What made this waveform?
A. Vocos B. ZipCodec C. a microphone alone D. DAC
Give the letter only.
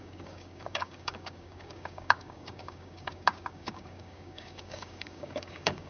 D